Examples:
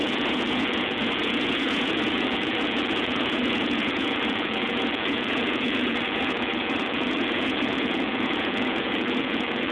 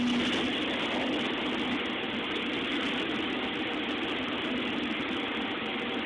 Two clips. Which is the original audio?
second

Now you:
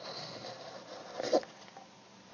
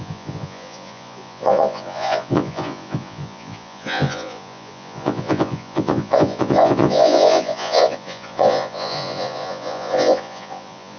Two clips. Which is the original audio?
first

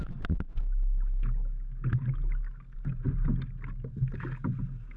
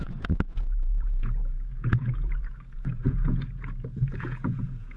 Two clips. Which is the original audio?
first